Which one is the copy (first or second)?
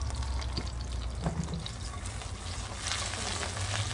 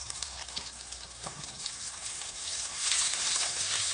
second